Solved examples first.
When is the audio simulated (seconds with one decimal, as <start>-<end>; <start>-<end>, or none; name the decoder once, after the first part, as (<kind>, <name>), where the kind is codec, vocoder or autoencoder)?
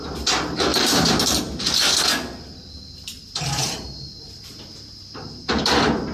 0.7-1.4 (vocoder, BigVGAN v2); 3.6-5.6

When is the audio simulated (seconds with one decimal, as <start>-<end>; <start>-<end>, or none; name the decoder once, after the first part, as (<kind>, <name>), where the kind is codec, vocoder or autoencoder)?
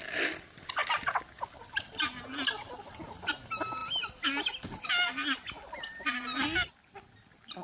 none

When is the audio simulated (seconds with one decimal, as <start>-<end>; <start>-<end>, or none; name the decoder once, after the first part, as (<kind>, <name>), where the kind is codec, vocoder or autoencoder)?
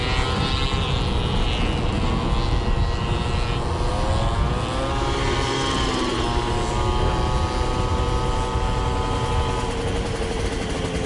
none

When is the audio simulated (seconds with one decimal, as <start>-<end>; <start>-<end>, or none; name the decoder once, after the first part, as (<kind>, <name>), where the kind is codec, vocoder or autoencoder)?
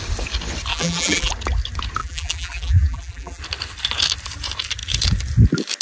0.7-1.3 (vocoder, BigVGAN v2); 2.0-3.4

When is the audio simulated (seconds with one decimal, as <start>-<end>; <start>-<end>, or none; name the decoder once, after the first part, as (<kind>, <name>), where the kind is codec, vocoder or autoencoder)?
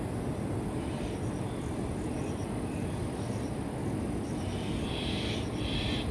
0.0-3.8 (vocoder, BigVGAN v2); 4.7-6.1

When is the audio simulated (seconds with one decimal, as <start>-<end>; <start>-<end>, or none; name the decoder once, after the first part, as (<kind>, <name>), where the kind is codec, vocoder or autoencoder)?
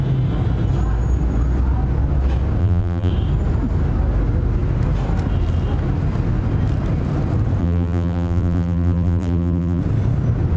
2.6-3.1 (vocoder, BigVGAN v2); 7.6-9.8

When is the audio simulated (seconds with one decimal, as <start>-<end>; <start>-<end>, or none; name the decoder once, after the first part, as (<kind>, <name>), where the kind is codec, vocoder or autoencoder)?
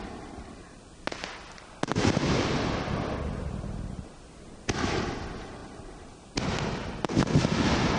5.6-6.4 (vocoder, BigVGAN v2)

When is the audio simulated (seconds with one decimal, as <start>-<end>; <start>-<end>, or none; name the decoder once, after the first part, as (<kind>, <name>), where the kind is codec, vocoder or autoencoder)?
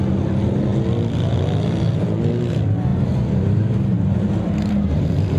2.9-5.4 (vocoder, BigVGAN v2)